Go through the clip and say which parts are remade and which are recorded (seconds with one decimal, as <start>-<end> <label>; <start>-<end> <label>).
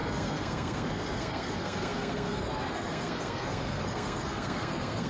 0.0-5.1 remade